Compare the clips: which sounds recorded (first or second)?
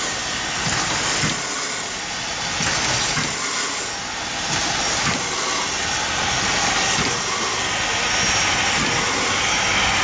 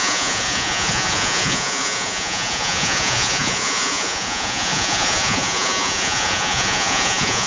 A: first